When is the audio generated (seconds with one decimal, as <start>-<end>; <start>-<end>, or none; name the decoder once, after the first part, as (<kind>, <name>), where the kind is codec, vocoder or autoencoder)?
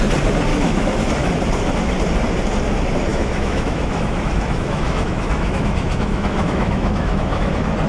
0.5-1.3 (autoencoder, DAC-VAE); 3.1-7.5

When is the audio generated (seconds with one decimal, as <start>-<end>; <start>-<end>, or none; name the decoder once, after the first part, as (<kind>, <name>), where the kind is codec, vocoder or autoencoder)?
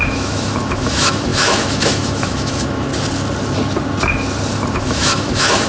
0.0-2.9 (autoencoder, DAC-VAE); 4.7-5.7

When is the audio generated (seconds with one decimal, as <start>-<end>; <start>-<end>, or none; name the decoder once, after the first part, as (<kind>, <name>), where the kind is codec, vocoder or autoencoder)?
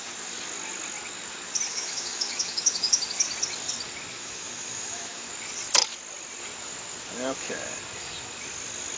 1.7-3.0 (autoencoder, DAC-VAE); 4.1-5.3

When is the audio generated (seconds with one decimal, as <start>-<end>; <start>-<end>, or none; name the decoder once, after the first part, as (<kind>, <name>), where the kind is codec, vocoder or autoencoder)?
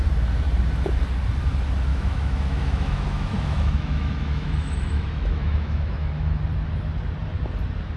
1.9-6.4 (autoencoder, DAC-VAE)